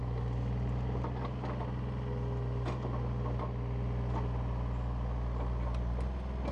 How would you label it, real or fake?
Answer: real